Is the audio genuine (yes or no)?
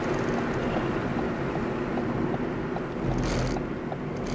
yes